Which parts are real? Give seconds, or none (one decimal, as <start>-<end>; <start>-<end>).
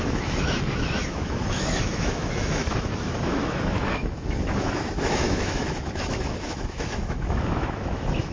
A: none